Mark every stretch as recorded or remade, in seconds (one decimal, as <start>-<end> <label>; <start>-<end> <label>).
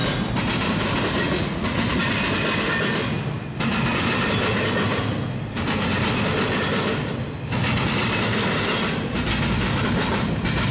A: 0.0-1.2 recorded; 1.2-1.8 remade; 1.8-10.7 recorded